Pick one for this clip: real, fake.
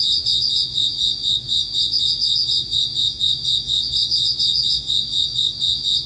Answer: fake